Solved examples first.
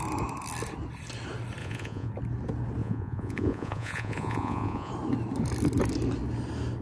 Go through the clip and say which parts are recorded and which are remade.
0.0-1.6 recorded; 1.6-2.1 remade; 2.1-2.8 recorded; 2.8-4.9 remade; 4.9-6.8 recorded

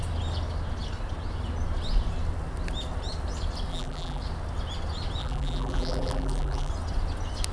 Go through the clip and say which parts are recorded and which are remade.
0.0-3.7 recorded; 3.7-4.2 remade; 4.2-5.2 recorded; 5.2-6.7 remade; 6.7-7.5 recorded

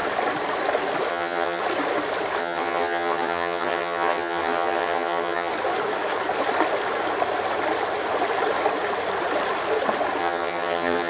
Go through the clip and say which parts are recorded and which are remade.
0.0-1.1 recorded; 1.1-1.6 remade; 1.6-2.4 recorded; 2.4-5.5 remade; 5.5-10.2 recorded; 10.2-11.1 remade

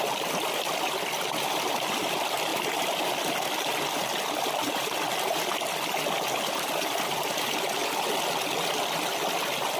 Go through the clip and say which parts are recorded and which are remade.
0.0-9.8 recorded

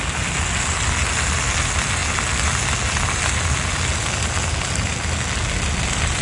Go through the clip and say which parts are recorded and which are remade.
0.0-6.2 recorded

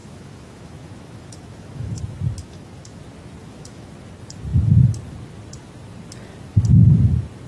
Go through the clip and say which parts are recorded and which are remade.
0.0-2.0 remade; 2.0-2.4 recorded; 2.4-3.0 remade; 3.0-3.4 recorded; 3.4-3.9 remade; 3.9-7.5 recorded

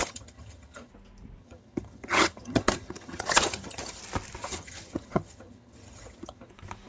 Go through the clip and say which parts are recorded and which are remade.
0.0-0.9 remade; 0.9-1.4 recorded; 1.4-4.0 remade; 4.0-4.4 recorded; 4.4-6.5 remade; 6.5-6.9 recorded

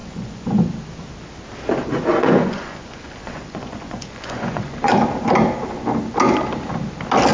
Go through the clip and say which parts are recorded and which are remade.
0.0-0.7 remade; 0.7-2.1 recorded; 2.1-4.9 remade; 4.9-7.3 recorded